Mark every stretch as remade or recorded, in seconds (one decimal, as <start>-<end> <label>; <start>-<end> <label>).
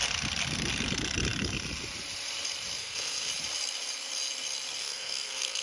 0.0-2.8 recorded; 2.8-3.3 remade; 3.3-4.8 recorded; 4.8-5.6 remade